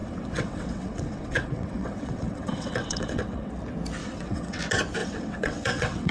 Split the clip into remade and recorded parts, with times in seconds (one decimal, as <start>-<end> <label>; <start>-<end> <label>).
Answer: 0.0-3.5 remade; 3.5-4.0 recorded; 4.0-4.6 remade; 4.6-5.0 recorded; 5.0-6.1 remade